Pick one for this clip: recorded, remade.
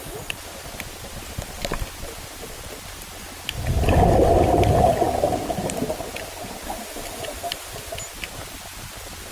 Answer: recorded